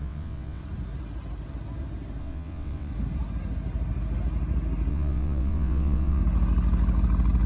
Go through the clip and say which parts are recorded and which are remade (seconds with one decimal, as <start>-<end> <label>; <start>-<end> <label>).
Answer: 0.0-0.6 remade; 0.6-2.2 recorded; 2.2-2.9 remade; 2.9-4.9 recorded; 4.9-6.2 remade; 6.2-7.5 recorded